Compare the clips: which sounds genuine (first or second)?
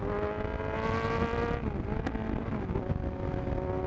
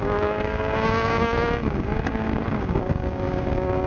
first